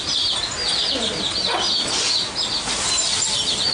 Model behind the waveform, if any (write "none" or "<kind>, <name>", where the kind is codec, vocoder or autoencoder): none